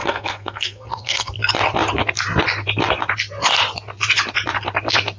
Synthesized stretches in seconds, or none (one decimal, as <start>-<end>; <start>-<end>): 0.0-1.3